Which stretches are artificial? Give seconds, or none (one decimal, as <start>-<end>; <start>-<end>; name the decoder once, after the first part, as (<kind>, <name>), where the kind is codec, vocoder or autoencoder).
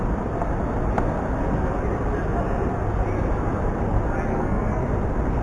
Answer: 4.3-4.8 (codec, SNAC)